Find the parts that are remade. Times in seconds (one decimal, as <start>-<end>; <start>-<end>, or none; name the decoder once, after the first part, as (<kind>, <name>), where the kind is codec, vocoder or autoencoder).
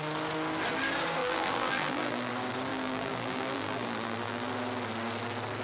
1.2-2.3 (vocoder, BigVGAN v2); 2.7-4.5